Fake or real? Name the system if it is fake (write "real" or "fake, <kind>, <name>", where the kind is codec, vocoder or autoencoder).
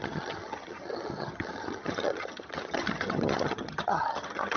fake, vocoder, HiFi-GAN